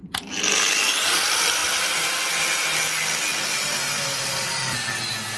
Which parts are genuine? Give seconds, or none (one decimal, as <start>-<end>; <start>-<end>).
1.6-3.5; 4.6-5.4